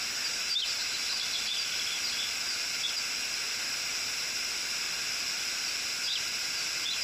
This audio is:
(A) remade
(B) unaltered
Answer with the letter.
B